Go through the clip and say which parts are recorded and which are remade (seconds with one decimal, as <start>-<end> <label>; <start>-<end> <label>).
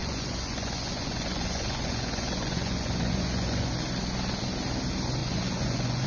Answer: 0.0-3.7 remade; 3.7-5.2 recorded; 5.2-6.1 remade